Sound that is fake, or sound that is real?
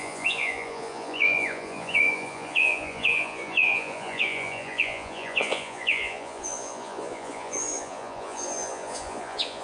fake